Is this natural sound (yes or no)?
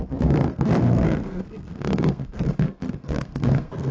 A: no